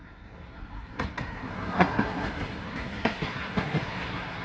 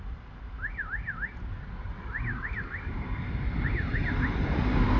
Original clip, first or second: second